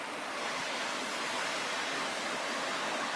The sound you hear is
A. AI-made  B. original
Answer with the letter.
B